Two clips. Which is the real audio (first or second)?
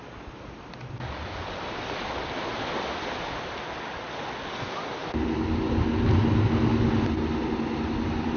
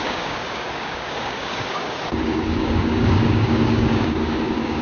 first